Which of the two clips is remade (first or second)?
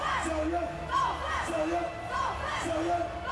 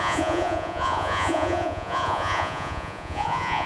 second